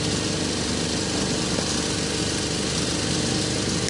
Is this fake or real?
real